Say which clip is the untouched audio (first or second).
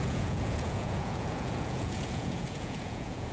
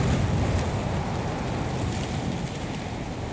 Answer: second